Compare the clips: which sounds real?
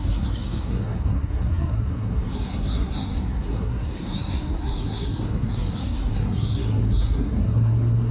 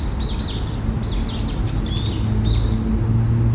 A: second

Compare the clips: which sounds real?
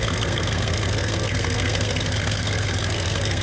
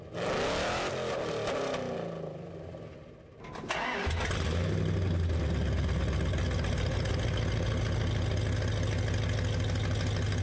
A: second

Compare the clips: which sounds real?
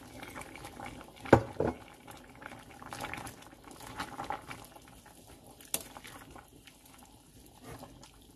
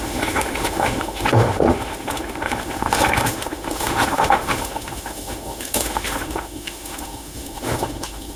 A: first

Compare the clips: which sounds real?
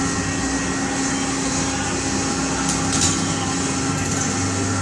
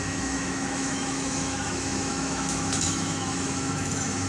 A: first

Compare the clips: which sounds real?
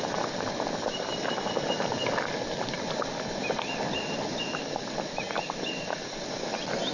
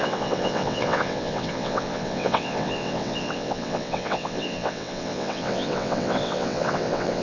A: first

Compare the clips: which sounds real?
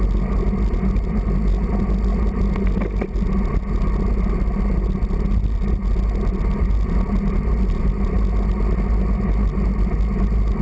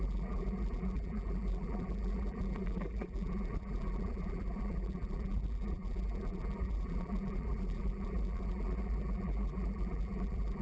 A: first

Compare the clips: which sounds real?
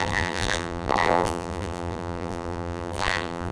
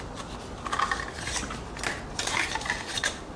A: second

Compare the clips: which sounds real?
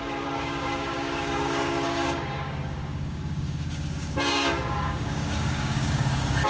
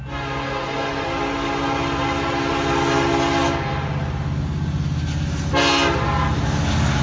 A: second